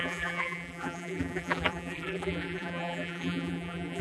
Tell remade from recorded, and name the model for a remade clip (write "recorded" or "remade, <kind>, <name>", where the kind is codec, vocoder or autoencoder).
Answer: remade, vocoder, BigVGAN v2